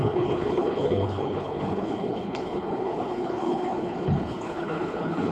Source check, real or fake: fake